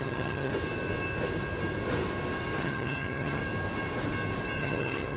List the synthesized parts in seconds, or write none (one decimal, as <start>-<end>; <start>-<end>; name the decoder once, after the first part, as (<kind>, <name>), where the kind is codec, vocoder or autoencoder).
0.0-0.5 (vocoder, HiFi-GAN); 2.6-3.4; 4.6-5.2